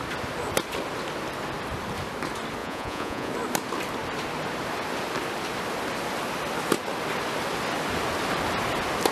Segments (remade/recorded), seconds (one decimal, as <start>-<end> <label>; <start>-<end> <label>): 0.0-2.6 recorded; 2.6-3.3 remade; 3.3-9.1 recorded